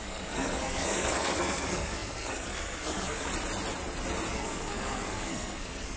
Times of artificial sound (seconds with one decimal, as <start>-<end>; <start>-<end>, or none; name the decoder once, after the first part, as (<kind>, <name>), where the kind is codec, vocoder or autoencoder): 0.0-3.3 (codec, SNAC); 4.3-6.0